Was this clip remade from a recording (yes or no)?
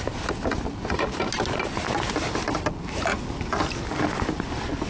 no